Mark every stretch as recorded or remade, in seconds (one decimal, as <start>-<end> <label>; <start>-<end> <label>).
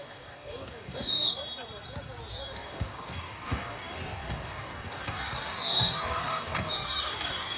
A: 0.0-1.4 remade; 1.4-2.3 recorded; 2.3-7.6 remade